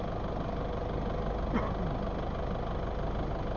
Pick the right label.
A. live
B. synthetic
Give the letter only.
A